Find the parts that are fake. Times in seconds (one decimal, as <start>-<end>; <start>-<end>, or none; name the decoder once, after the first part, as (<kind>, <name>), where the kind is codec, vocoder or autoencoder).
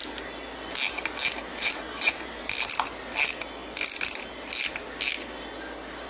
1.5-2.4 (vocoder, BigVGAN v2)